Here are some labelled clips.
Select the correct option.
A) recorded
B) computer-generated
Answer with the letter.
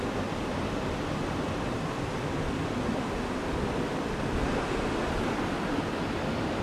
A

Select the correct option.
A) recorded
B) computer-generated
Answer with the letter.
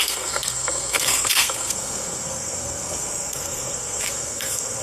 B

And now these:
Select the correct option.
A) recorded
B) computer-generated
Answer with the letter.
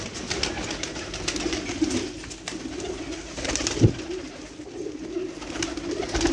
A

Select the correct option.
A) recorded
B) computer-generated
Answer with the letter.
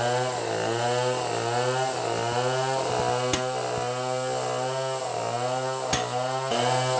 A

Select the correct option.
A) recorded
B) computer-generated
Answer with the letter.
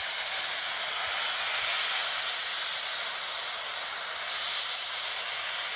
A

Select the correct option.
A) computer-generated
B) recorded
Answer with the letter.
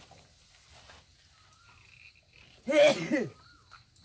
B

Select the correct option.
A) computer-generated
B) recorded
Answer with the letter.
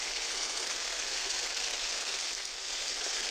A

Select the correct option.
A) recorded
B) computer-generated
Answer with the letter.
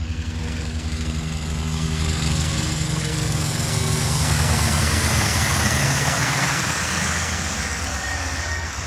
B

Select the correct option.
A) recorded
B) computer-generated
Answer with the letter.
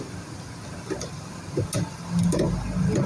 A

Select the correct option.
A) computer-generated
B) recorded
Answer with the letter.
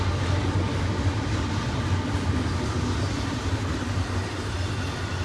B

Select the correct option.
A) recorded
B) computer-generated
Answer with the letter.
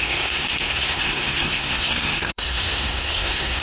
B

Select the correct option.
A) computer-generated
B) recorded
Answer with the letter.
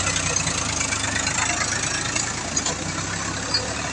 B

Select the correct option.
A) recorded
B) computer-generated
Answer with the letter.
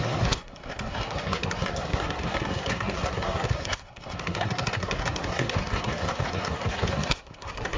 B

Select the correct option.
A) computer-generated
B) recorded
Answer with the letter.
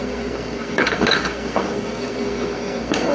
A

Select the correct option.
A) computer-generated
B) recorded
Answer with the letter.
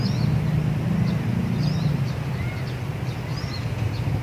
B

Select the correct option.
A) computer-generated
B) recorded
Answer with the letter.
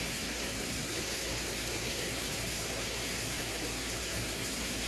A